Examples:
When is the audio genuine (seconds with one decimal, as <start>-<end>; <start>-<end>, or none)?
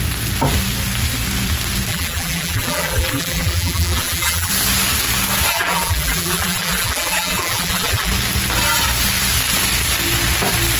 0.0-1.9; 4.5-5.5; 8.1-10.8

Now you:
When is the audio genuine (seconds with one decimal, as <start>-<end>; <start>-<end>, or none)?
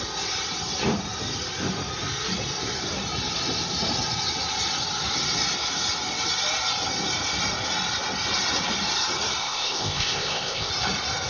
0.0-9.4; 10.7-11.3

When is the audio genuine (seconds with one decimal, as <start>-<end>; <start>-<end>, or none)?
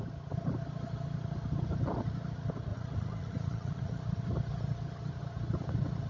0.0-2.7; 4.0-6.1